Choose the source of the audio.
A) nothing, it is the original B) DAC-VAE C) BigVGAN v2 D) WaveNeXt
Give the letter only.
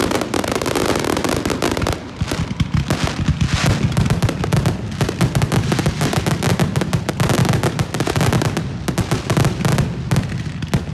A